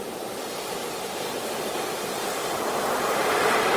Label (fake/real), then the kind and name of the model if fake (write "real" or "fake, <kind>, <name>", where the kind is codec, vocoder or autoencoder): fake, vocoder, BigVGAN v2